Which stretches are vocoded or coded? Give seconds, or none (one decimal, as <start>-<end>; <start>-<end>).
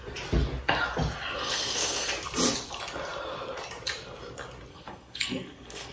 1.4-2.1; 4.7-5.9